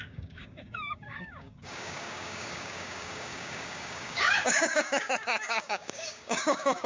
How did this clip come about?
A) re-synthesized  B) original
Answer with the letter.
A